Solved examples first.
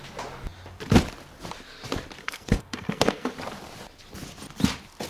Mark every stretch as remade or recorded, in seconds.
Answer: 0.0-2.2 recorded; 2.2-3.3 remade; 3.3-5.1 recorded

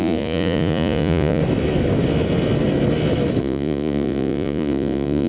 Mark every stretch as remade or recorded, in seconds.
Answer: 0.0-1.4 remade; 1.4-3.4 recorded; 3.4-5.3 remade

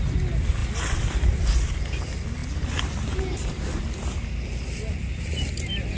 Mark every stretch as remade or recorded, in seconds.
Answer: 0.0-6.0 recorded